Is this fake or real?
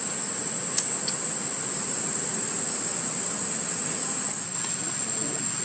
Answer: real